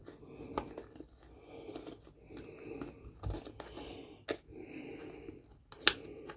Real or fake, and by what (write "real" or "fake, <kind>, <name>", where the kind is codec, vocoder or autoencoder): real